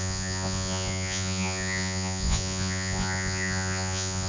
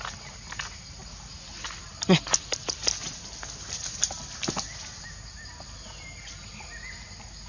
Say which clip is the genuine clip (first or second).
second